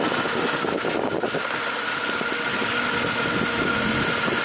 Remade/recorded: recorded